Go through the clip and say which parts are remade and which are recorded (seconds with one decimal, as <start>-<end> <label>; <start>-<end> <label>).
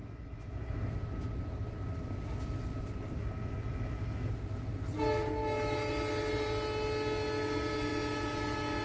0.0-0.9 remade; 0.9-3.2 recorded; 3.2-4.3 remade; 4.3-5.4 recorded; 5.4-5.9 remade; 5.9-8.8 recorded